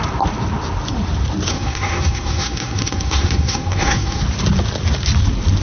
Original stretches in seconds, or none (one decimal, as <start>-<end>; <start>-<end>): 0.0-1.5; 4.2-5.6